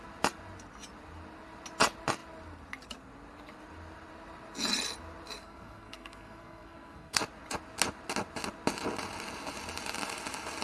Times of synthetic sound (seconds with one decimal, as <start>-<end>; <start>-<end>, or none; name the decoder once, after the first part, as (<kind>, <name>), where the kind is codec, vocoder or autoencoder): 5.4-7.2 (codec, SNAC)